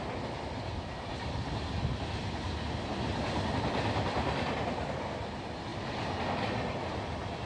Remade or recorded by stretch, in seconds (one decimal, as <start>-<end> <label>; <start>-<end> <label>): 0.0-5.7 remade; 5.7-6.3 recorded; 6.3-7.5 remade